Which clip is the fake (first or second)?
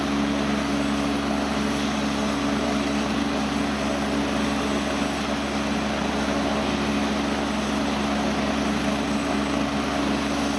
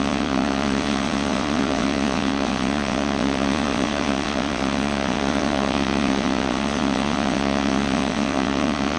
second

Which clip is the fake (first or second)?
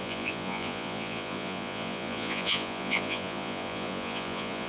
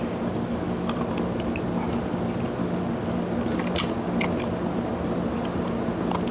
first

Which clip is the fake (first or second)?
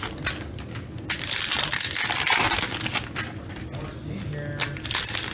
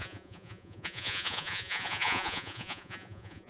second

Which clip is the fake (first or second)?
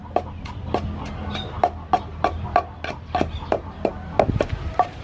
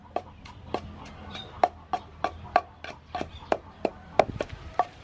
second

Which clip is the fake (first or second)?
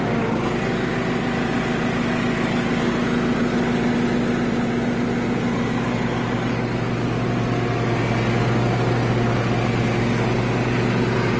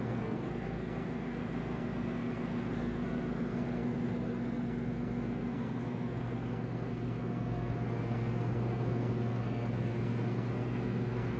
second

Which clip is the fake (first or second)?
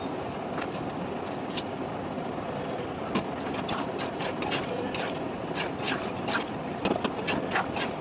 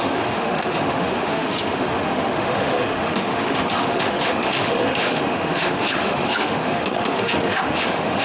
second